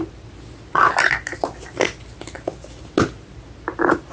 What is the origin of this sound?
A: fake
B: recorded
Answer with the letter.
B